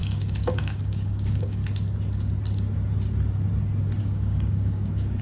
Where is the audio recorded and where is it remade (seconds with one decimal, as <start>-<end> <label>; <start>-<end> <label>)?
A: 0.0-1.6 remade; 1.6-4.0 recorded; 4.0-5.2 remade